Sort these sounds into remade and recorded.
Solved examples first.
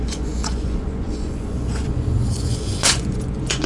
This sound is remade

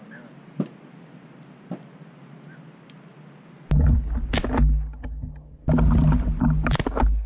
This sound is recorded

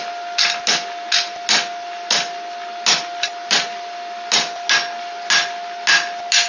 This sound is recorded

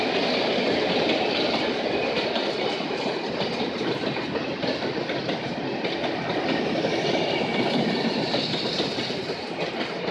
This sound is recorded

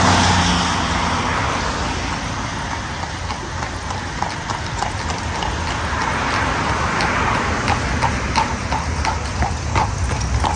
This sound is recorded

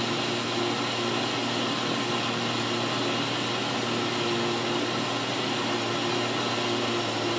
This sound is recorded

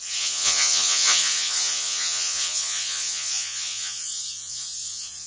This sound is remade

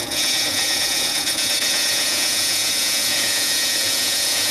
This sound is remade